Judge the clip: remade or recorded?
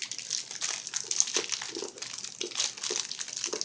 recorded